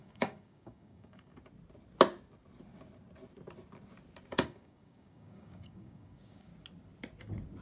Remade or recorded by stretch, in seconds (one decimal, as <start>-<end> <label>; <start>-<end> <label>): 0.0-1.3 remade; 1.3-4.3 recorded; 4.3-6.5 remade; 6.5-7.6 recorded